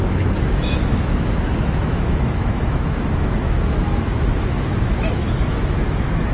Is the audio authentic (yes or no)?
no